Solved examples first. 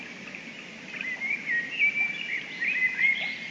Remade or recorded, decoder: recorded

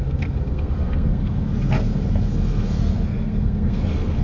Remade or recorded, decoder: remade, codec, SNAC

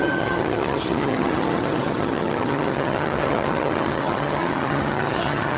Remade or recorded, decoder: remade, vocoder, HiFi-GAN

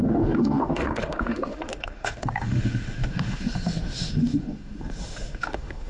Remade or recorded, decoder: remade, autoencoder, DAC-VAE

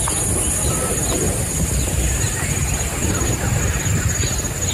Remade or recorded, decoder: recorded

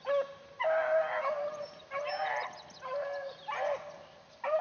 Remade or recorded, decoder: recorded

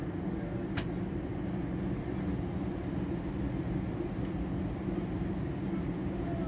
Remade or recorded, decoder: recorded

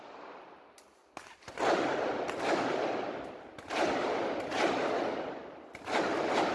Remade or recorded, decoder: recorded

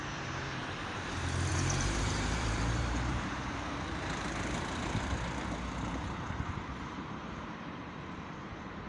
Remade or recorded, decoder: remade, vocoder, BigVGAN v2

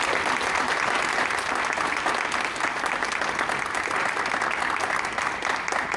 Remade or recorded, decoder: recorded